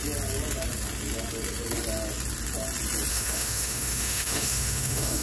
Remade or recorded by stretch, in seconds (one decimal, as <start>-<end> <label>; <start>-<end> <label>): 0.0-3.1 recorded; 3.1-5.2 remade

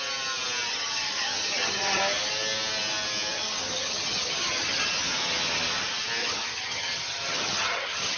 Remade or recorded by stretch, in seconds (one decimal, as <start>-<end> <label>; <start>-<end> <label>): 0.0-0.7 recorded; 0.7-2.0 remade; 2.0-3.3 recorded; 3.3-4.9 remade; 4.9-6.2 recorded; 6.2-8.2 remade

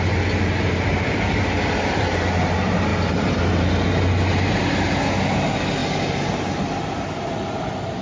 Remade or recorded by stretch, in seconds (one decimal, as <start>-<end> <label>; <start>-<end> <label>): 0.0-8.0 recorded

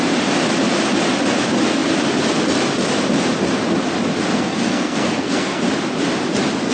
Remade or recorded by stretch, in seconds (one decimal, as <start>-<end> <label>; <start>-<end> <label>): 0.0-4.3 recorded; 4.3-5.6 remade; 5.6-6.7 recorded

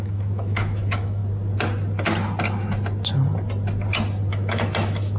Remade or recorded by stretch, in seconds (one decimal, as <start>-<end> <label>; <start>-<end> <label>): 0.0-1.2 remade; 1.2-4.3 recorded; 4.3-5.2 remade

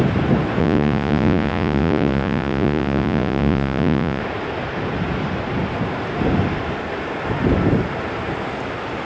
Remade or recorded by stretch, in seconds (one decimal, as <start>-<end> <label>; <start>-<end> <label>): 0.0-0.6 recorded; 0.6-4.2 remade; 4.2-9.0 recorded